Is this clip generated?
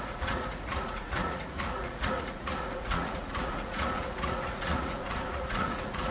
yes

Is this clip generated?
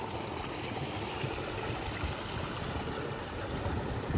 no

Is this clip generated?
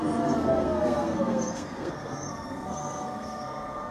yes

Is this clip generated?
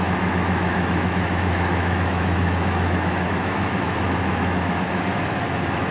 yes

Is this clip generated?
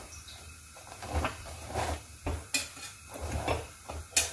no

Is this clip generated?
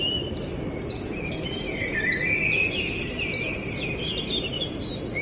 no